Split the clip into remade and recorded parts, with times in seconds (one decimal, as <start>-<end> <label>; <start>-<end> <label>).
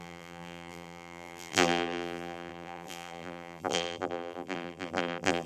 0.0-5.5 remade